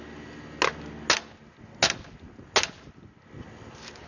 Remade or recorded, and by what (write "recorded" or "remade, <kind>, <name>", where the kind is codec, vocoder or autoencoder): recorded